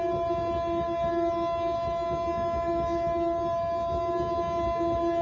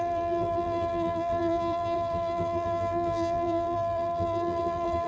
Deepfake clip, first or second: second